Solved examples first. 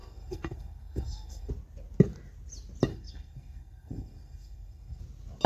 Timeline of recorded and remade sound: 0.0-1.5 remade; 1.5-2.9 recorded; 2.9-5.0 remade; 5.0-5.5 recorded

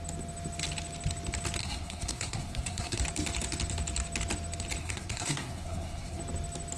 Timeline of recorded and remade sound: 0.0-1.6 recorded; 1.6-3.0 remade; 3.0-4.8 recorded; 4.8-6.2 remade; 6.2-6.8 recorded

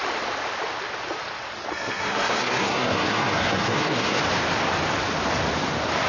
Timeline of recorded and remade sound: 0.0-1.7 recorded; 1.7-4.2 remade; 4.2-6.1 recorded

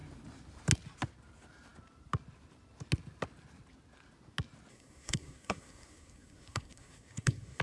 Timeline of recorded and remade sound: 0.0-4.7 recorded; 4.7-7.6 remade

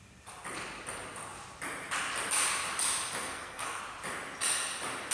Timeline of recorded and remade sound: 0.0-3.2 recorded; 3.2-3.8 remade; 3.8-5.1 recorded

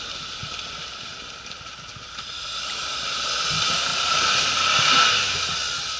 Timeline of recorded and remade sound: 0.0-6.0 recorded

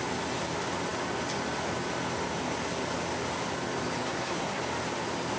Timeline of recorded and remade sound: 0.0-4.0 recorded; 4.0-4.6 remade; 4.6-5.4 recorded

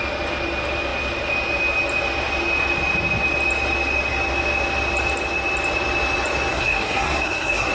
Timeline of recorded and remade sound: 0.0-6.5 recorded; 6.5-7.7 remade